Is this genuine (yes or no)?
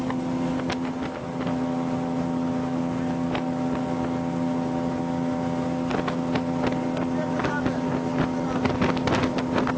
yes